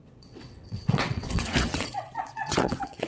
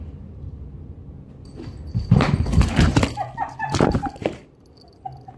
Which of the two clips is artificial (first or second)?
first